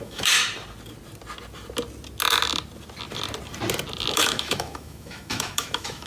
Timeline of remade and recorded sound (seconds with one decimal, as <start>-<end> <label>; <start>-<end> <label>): 0.0-0.4 remade; 0.4-4.1 recorded; 4.1-6.1 remade